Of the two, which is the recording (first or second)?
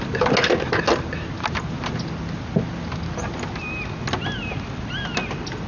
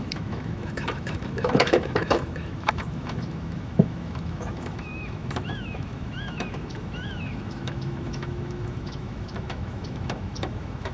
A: first